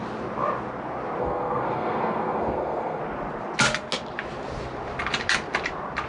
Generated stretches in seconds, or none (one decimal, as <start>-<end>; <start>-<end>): 1.2-3.0